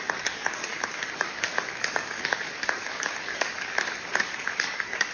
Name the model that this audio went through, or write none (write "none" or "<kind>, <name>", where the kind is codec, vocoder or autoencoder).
codec, DAC